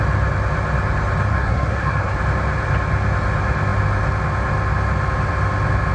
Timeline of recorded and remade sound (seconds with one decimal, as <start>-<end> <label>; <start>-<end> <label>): 0.0-1.3 recorded; 1.3-2.1 remade; 2.1-5.9 recorded

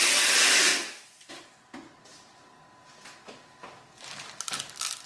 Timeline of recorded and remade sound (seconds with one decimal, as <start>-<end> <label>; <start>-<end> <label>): 0.0-5.1 recorded

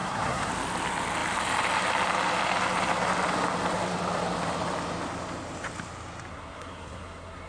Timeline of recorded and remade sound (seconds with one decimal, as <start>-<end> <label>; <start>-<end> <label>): 0.0-0.5 remade; 0.5-6.3 recorded; 6.3-7.5 remade

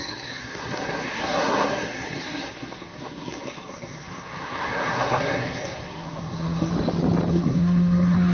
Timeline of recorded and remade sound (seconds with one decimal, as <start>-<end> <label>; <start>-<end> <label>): 0.0-6.7 remade; 6.7-7.3 recorded; 7.3-8.3 remade